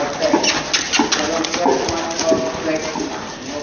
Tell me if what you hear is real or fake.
real